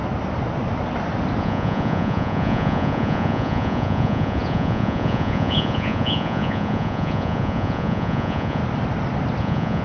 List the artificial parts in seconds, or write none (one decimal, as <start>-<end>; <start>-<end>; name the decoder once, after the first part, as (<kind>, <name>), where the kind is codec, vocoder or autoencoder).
1.4-8.6 (vocoder, Vocos); 9.4-9.8